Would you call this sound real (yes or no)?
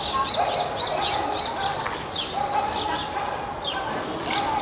yes